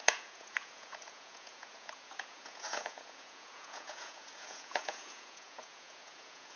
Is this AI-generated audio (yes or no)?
yes